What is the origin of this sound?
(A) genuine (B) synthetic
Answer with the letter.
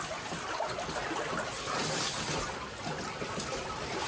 A